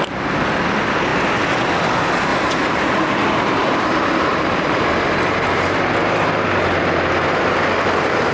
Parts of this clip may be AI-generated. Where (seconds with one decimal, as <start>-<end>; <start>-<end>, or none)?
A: 2.3-5.9